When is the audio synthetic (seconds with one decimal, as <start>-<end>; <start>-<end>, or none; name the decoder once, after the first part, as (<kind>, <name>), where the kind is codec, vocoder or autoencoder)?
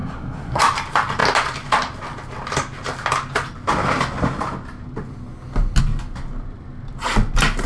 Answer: 0.0-0.6 (codec, SNAC)